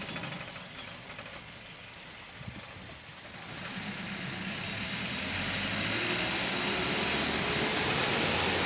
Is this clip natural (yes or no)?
yes